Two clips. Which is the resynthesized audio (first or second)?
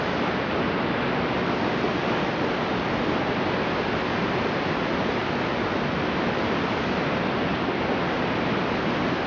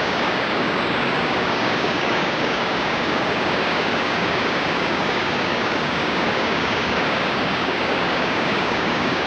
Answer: second